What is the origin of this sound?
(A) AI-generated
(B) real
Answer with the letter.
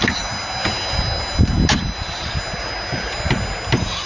B